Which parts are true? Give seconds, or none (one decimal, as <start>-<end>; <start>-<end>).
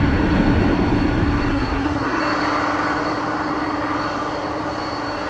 0.0-1.5; 2.2-5.3